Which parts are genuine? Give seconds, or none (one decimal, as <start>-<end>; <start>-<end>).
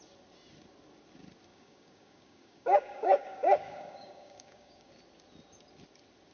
0.0-1.5; 4.9-6.3